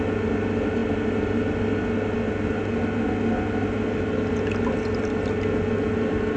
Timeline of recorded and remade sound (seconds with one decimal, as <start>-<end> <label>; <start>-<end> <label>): 0.0-6.4 recorded